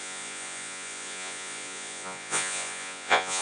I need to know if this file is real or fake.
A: fake